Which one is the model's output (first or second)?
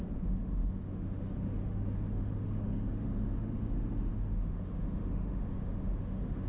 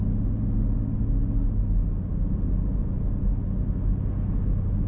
first